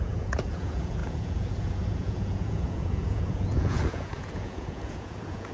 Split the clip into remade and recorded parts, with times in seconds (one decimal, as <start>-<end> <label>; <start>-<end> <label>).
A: 0.0-5.5 remade